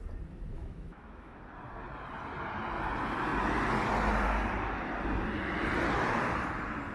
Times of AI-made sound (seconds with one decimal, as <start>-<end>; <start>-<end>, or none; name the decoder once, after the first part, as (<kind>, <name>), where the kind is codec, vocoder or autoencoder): 0.5-1.4 (autoencoder, DAC-VAE)